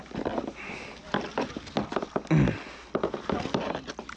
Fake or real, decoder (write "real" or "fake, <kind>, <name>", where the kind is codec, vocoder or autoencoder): real